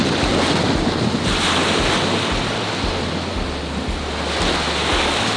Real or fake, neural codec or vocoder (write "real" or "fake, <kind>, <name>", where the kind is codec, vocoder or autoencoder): real